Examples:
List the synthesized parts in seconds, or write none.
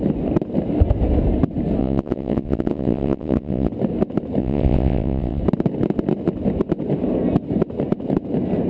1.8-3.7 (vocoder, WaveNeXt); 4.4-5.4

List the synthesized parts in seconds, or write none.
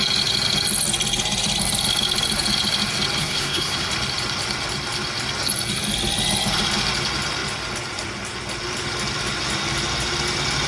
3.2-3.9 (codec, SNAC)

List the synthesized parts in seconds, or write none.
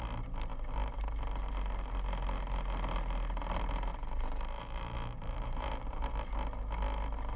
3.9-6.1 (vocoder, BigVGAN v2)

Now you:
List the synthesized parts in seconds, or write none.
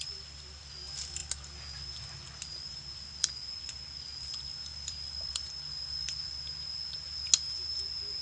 4.7-6.3 (vocoder, BigVGAN v2)